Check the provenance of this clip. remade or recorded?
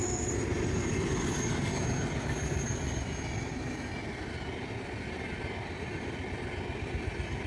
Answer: recorded